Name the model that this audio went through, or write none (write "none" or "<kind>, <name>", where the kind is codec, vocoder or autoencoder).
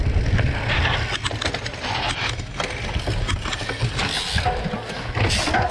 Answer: none